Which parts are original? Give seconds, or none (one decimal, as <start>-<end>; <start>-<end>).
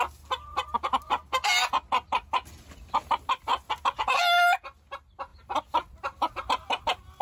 0.0-5.3; 6.8-7.2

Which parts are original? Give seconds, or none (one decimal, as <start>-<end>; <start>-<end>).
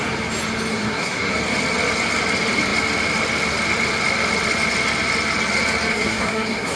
0.0-0.7; 1.3-5.9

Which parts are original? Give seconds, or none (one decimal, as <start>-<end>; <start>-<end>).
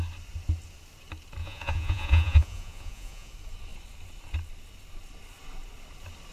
0.0-1.4; 3.3-6.3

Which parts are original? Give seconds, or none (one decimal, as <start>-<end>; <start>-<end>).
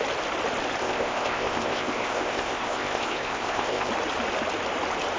0.0-0.8; 3.9-5.2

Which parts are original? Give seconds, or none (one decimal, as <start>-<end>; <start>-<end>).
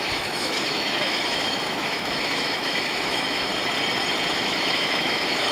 3.5-4.3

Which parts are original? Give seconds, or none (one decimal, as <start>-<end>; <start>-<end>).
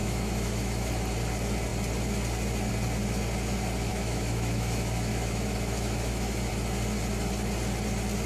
0.9-3.9; 6.5-8.3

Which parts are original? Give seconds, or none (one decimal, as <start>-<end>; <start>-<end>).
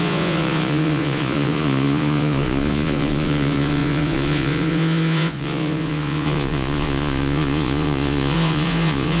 none